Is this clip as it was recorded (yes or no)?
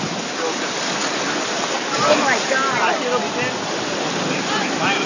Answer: yes